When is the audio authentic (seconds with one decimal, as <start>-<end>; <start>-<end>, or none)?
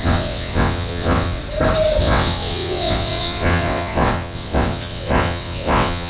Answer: 1.4-2.0